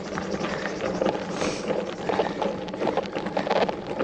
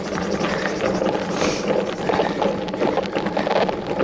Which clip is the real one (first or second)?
second